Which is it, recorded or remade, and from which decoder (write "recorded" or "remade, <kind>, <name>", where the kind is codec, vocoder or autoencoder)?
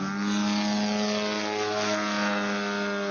recorded